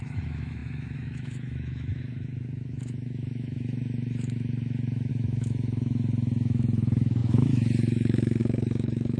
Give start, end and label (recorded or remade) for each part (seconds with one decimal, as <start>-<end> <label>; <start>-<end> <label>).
0.0-9.2 remade